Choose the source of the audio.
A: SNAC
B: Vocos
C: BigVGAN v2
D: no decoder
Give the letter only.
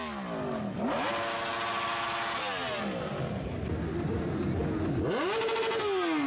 D